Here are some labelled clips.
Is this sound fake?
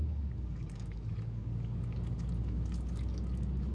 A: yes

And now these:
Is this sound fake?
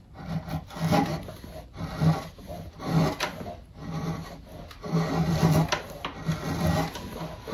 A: no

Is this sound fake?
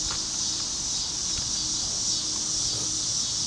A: no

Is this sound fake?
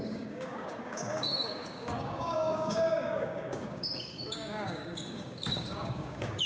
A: yes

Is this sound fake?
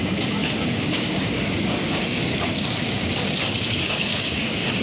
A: yes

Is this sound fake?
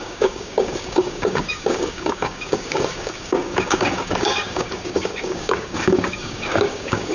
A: yes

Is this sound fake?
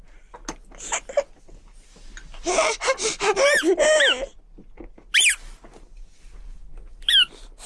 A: no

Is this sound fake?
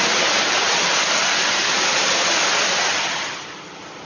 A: no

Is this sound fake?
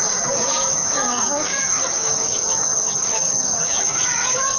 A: yes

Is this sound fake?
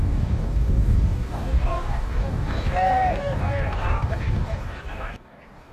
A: yes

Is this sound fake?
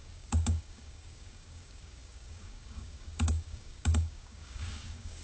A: yes